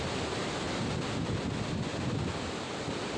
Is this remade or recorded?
recorded